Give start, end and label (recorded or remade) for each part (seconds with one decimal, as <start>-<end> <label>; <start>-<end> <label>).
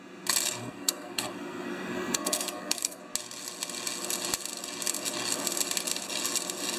0.0-0.6 recorded; 0.6-3.0 remade; 3.0-6.8 recorded